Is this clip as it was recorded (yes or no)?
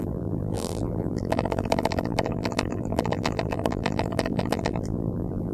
no